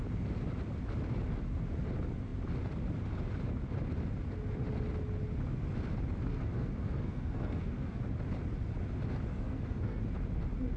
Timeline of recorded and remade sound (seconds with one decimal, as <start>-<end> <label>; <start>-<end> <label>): 0.0-6.3 recorded; 6.3-8.0 remade; 8.0-9.3 recorded; 9.3-10.0 remade; 10.0-10.8 recorded